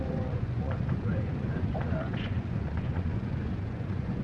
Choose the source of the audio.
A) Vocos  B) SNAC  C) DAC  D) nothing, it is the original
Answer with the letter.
A